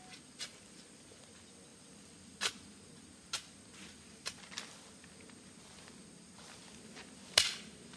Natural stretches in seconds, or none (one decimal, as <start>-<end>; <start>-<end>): 0.0-1.7; 2.5-8.0